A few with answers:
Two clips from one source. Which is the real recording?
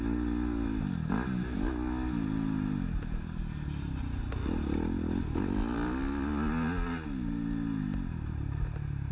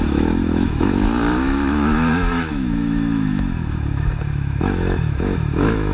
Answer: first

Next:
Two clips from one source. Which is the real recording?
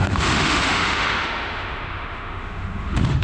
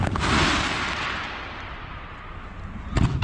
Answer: second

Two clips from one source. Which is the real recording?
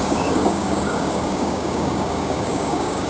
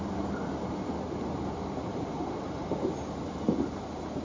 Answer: second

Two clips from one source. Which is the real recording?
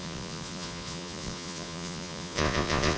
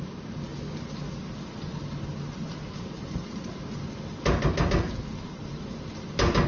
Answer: second